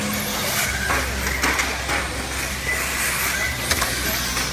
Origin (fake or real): real